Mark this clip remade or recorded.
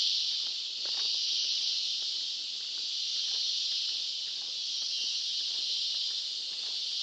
recorded